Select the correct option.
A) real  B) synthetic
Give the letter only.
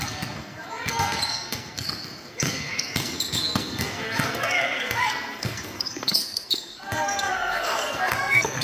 B